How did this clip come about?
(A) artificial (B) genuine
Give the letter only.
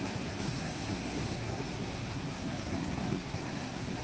A